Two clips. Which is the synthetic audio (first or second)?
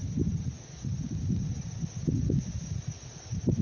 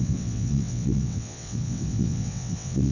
second